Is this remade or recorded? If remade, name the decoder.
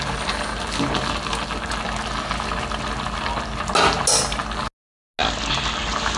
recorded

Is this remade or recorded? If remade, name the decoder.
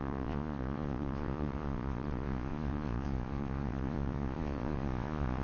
remade, vocoder, Vocos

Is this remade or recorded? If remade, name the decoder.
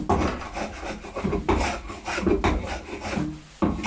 recorded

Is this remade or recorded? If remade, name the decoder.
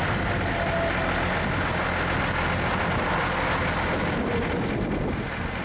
recorded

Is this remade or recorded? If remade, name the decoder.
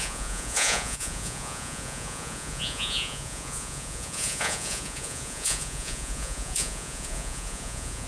remade, vocoder, Vocos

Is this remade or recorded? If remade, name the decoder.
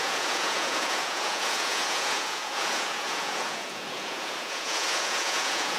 remade, vocoder, Vocos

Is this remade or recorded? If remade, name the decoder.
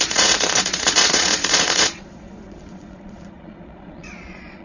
remade, vocoder, Vocos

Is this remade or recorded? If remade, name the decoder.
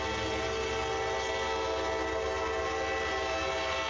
recorded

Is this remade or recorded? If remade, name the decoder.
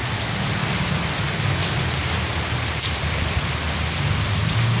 recorded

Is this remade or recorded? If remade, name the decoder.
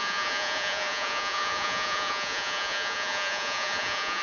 remade, vocoder, Vocos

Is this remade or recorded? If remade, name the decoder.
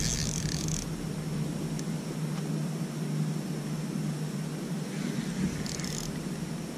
recorded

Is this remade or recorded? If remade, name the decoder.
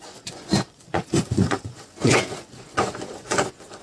remade, vocoder, Vocos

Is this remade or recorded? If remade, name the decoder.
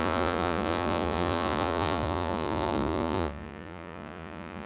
remade, vocoder, Vocos